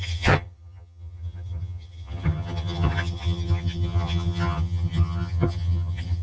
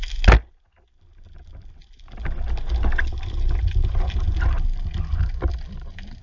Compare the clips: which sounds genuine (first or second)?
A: second